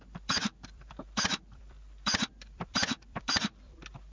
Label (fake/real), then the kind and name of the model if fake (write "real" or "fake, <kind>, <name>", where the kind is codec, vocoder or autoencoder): fake, vocoder, BigVGAN v2